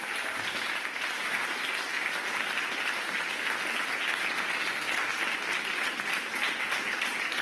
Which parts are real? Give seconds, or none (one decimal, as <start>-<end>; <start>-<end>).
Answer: 1.9-5.6